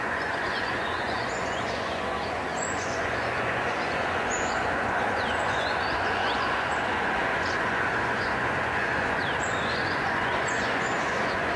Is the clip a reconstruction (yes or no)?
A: yes